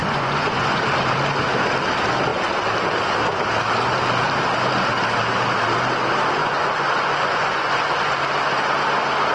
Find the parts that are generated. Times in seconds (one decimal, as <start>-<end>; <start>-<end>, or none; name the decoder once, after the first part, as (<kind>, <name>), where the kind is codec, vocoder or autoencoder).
0.0-0.8 (vocoder, Vocos); 6.4-8.1